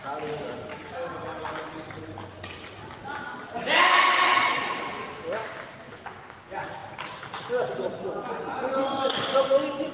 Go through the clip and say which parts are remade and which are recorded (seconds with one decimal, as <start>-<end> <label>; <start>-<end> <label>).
0.0-9.9 recorded

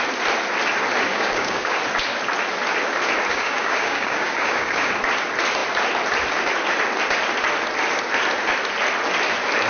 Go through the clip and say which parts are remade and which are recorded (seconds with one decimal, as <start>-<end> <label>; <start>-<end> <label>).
0.0-1.1 recorded; 1.1-1.8 remade; 1.8-3.3 recorded; 3.3-4.9 remade; 4.9-9.7 recorded

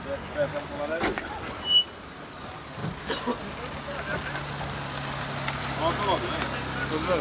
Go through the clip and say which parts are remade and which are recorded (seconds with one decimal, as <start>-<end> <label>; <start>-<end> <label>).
0.0-7.2 recorded

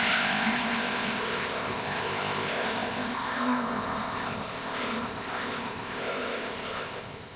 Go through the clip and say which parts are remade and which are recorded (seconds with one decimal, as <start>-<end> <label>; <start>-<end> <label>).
0.0-7.4 remade

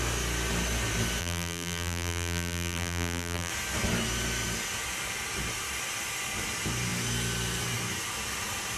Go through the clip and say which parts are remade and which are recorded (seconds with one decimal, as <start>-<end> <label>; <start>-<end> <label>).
0.0-1.2 recorded; 1.2-3.5 remade; 3.5-8.8 recorded

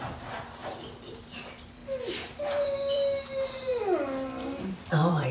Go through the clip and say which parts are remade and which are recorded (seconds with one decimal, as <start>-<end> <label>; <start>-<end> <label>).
0.0-1.8 remade; 1.8-2.4 recorded; 2.4-3.7 remade; 3.7-4.4 recorded; 4.4-5.3 remade

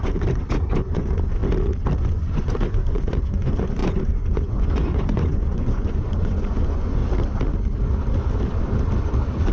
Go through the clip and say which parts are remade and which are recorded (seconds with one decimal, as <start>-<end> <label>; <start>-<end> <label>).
0.0-1.4 remade; 1.4-2.1 recorded; 2.1-7.0 remade; 7.0-9.5 recorded